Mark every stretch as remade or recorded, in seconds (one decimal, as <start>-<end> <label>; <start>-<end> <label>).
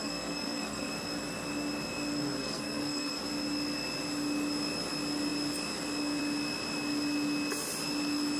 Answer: 0.0-0.9 remade; 0.9-2.4 recorded; 2.4-3.2 remade; 3.2-8.4 recorded